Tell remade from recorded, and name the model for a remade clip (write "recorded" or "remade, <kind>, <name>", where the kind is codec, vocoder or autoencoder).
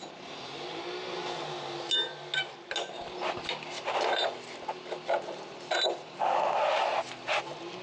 recorded